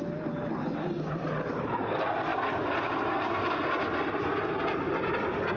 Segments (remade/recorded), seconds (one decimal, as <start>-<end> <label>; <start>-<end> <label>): 0.0-5.6 recorded